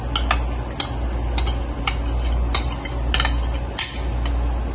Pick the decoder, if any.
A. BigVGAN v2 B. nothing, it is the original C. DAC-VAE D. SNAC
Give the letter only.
B